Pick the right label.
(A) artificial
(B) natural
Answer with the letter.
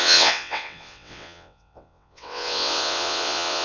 A